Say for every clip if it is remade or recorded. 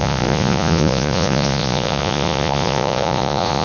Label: remade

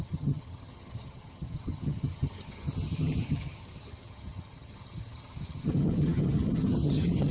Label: remade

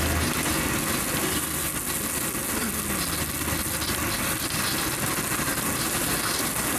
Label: recorded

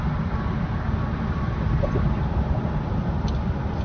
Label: recorded